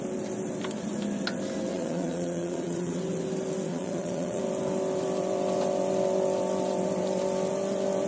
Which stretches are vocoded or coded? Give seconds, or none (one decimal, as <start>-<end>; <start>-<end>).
1.7-3.0; 3.7-4.4